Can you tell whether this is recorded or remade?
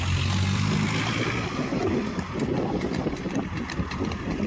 recorded